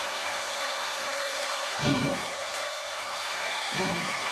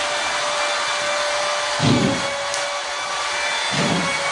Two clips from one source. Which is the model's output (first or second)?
first